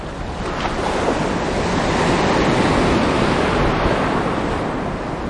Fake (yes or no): no